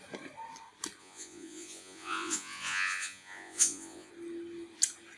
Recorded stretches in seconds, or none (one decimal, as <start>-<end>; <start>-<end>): 0.0-1.0; 4.1-5.2

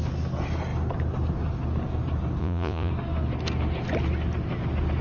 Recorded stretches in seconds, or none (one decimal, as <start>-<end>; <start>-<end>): 0.0-2.4; 2.9-5.0